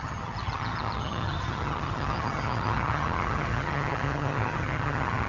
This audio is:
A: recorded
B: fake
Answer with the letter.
B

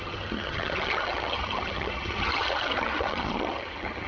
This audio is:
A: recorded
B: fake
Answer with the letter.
B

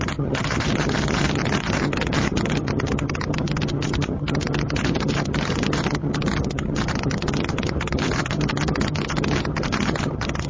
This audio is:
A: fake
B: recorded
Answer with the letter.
A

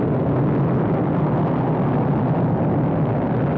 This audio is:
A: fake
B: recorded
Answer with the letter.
B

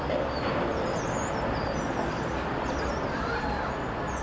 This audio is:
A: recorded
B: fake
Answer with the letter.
A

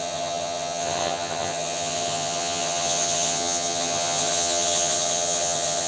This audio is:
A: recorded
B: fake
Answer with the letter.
B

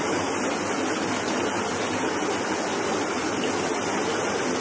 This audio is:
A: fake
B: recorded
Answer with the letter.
B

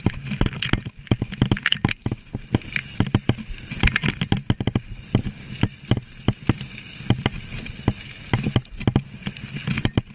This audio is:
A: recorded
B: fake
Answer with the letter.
A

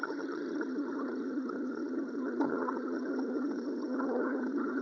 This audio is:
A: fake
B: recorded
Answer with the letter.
A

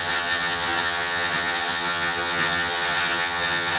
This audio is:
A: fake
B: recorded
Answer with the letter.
A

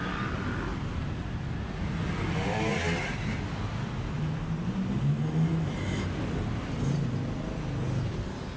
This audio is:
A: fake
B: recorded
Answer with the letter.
B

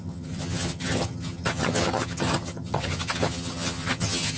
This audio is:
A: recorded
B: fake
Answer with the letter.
B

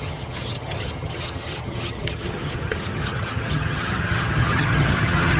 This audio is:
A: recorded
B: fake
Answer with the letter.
B